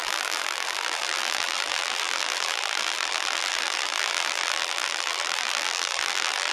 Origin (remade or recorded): remade